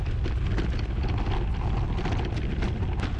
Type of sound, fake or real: real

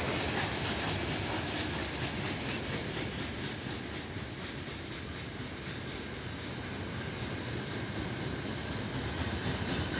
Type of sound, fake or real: real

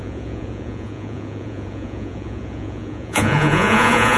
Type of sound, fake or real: fake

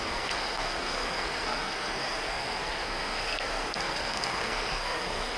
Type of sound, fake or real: fake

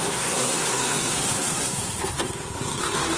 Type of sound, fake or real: fake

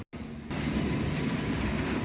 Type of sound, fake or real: real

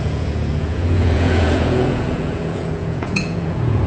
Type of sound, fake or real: fake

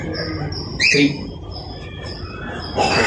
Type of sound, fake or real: real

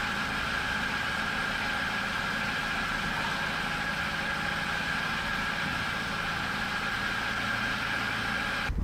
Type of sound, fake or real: real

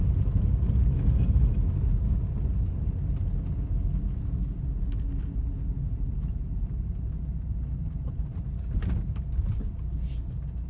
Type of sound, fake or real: real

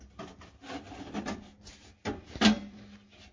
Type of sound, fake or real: real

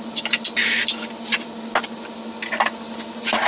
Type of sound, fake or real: real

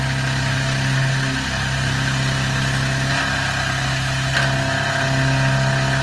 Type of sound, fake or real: real